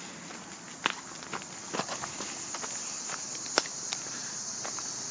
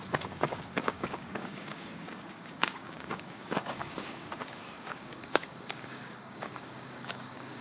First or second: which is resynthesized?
second